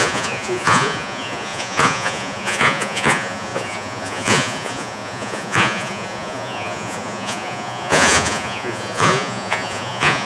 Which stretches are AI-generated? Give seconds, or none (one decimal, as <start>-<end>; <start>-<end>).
0.0-10.2